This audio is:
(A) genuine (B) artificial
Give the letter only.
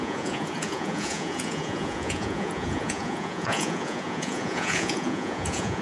B